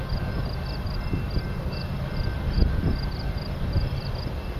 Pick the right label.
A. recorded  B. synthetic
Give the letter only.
B